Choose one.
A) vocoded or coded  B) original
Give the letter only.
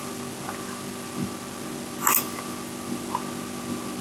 B